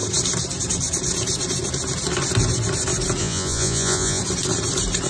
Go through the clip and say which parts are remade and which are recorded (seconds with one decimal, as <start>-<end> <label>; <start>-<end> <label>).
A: 0.0-3.2 recorded; 3.2-4.2 remade; 4.2-5.1 recorded